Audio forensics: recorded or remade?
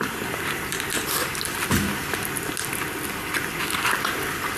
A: recorded